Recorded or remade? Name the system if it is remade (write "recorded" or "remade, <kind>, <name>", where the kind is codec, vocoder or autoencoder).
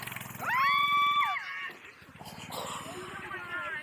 recorded